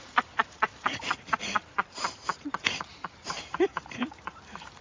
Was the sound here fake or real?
fake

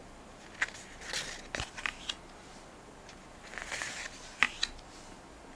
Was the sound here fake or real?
real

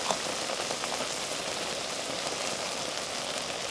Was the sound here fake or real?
real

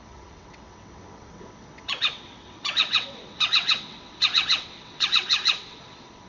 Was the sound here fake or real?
fake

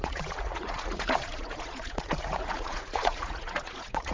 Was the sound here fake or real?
fake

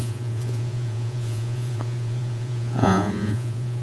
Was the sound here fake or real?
fake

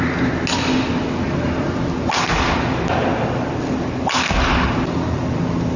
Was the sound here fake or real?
real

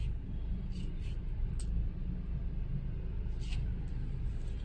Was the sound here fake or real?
real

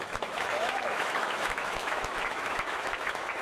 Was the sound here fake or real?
fake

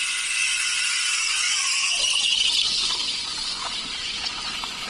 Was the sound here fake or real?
fake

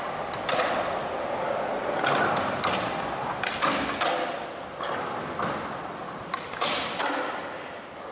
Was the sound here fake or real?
real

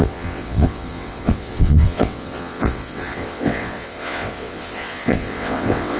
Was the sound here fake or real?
fake